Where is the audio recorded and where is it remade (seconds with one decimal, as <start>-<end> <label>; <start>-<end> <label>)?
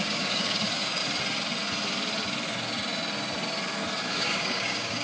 0.0-1.0 remade; 1.0-4.0 recorded; 4.0-5.0 remade